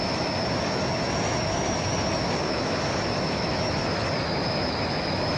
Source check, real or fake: fake